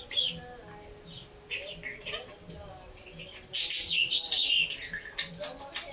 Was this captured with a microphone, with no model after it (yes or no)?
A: yes